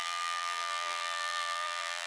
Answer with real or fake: fake